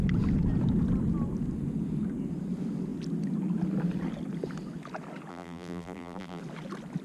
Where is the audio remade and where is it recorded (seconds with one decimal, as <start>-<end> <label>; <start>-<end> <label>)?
0.0-5.3 recorded; 5.3-6.4 remade; 6.4-7.0 recorded